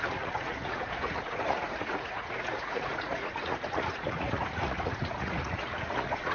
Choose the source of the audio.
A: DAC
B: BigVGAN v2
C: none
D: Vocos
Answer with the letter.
D